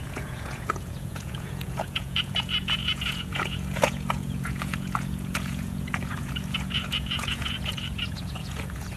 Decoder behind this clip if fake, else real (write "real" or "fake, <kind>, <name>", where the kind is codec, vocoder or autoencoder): fake, vocoder, Vocos